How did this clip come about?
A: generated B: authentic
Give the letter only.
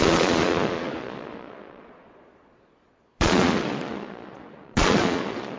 A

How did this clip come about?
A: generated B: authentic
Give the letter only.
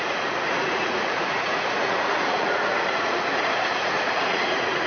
A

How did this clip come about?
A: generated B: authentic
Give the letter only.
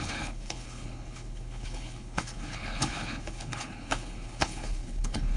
A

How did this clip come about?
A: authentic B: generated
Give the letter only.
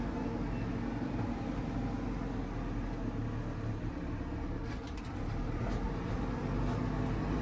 A